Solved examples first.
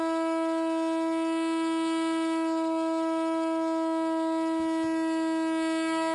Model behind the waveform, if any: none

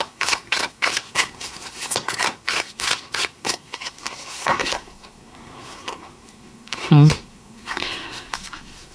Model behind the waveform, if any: codec, SNAC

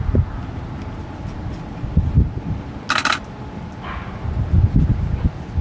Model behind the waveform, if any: none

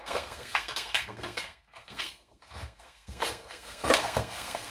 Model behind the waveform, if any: codec, SNAC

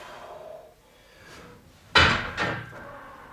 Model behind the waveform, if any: none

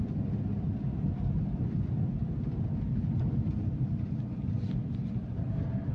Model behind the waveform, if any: none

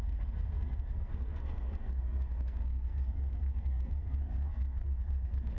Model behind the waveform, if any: codec, SNAC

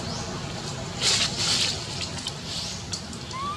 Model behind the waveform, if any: none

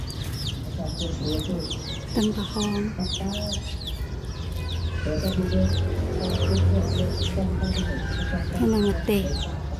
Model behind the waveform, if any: none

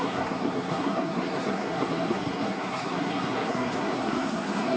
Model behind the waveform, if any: codec, SNAC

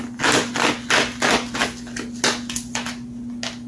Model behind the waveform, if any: none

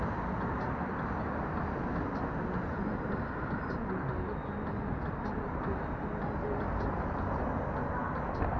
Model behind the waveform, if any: none